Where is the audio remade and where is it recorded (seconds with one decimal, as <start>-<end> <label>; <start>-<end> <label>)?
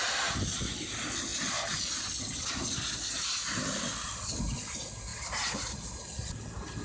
0.0-6.8 recorded